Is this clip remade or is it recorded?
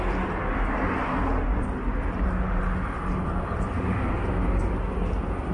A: recorded